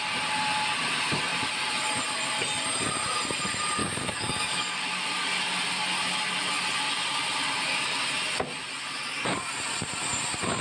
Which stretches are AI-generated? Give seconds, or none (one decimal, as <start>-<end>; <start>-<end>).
3.8-4.8